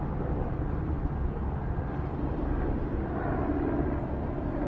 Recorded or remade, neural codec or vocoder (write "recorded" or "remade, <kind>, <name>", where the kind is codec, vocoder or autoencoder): recorded